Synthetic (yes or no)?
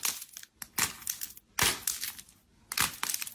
no